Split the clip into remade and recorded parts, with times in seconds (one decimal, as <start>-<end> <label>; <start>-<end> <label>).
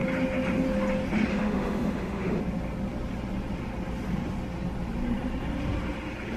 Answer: 0.0-1.3 recorded; 1.3-2.4 remade; 2.4-6.4 recorded